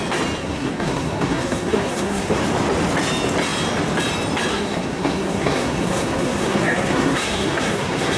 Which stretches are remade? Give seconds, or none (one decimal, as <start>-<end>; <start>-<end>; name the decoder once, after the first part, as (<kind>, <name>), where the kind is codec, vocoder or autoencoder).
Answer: 0.4-2.4 (codec, SNAC); 4.5-8.2